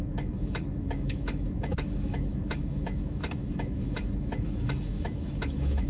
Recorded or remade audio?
remade